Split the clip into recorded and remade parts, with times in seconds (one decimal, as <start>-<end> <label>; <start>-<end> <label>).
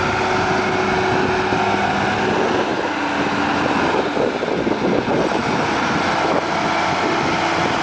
0.0-7.8 recorded